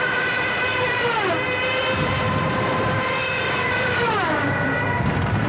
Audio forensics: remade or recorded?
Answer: remade